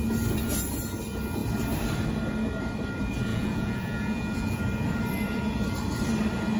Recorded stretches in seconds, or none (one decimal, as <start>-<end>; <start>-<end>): 0.0-3.3; 4.6-6.6